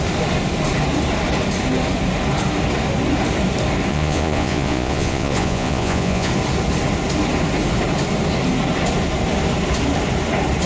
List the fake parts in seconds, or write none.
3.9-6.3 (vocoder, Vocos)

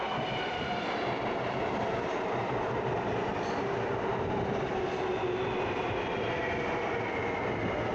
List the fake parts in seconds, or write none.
none

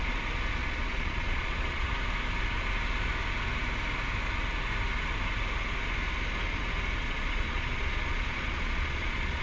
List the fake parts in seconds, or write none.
0.6-1.9 (vocoder, Vocos); 7.0-9.4